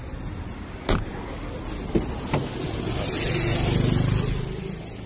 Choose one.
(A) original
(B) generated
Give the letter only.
A